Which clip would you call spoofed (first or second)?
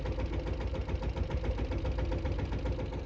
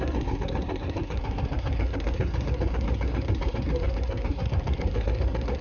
second